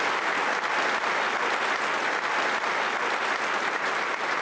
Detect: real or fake real